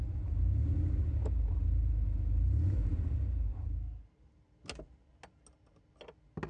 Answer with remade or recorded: recorded